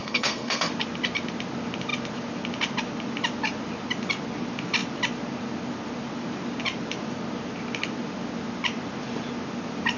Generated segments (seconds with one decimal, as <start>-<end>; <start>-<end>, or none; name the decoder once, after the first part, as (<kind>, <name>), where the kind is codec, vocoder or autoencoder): 0.0-0.7 (codec, SNAC)